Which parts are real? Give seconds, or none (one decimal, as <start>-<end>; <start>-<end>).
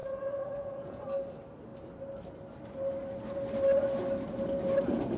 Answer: 1.0-5.2